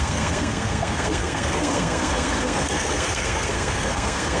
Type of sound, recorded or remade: remade